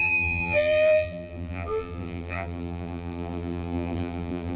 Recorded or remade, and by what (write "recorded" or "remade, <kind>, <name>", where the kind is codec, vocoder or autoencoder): remade, vocoder, BigVGAN v2